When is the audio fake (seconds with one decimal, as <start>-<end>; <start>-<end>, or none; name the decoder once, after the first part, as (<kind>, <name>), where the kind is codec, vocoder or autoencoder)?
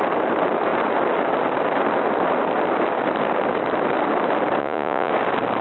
4.6-5.1 (vocoder, Vocos)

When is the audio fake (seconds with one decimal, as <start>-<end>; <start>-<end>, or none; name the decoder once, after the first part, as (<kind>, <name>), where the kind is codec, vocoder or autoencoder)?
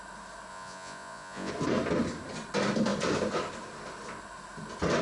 0.5-1.5 (vocoder, Vocos)